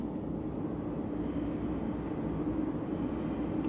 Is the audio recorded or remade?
recorded